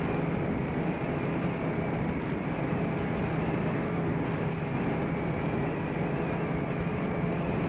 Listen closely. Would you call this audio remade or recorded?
recorded